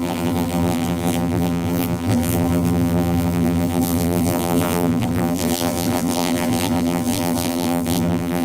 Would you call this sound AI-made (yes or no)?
yes